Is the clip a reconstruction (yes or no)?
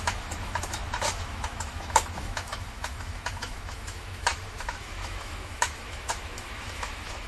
yes